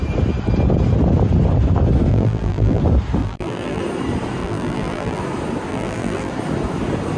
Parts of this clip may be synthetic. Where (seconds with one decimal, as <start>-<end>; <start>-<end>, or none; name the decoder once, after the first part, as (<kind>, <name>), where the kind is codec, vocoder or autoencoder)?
2.1-2.8 (vocoder, BigVGAN v2); 3.2-3.8; 4.4-5.2; 5.7-6.3